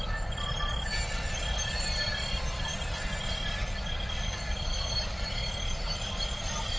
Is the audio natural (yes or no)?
yes